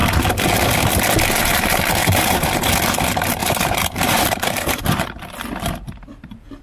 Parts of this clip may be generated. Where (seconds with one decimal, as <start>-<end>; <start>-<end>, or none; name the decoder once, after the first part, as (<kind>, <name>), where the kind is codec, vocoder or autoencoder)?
2.0-2.7 (vocoder, BigVGAN v2); 3.4-5.2